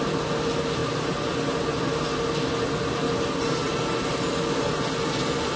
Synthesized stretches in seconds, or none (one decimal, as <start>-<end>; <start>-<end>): none